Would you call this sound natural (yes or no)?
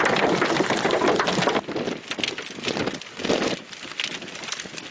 yes